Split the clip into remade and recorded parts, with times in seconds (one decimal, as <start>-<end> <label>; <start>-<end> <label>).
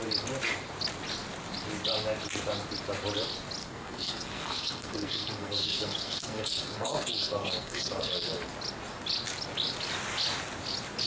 0.0-3.6 recorded; 3.6-8.5 remade; 8.5-11.1 recorded